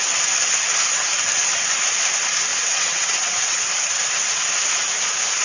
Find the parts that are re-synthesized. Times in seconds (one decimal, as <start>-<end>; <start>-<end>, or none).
2.5-3.6